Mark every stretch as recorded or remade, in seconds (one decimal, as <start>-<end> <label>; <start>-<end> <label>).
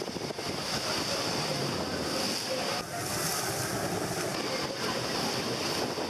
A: 0.0-6.1 recorded